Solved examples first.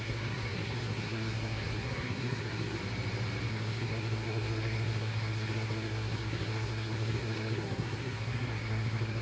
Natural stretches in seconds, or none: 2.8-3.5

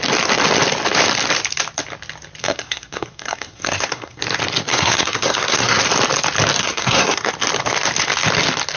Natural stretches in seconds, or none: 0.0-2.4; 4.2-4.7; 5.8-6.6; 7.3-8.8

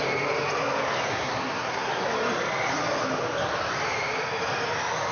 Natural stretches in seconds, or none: 0.0-1.1; 1.9-5.1

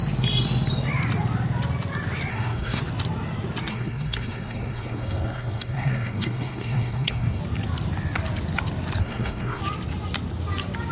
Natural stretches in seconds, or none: 0.0-2.3; 2.8-3.7; 7.4-9.0; 9.6-10.9

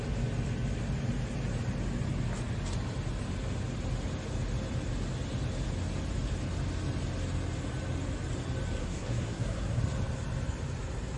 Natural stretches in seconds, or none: 0.0-8.8; 9.8-11.2

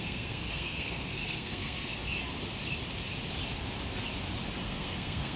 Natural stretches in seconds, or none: 2.0-4.6